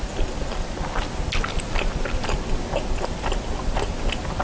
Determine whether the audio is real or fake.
real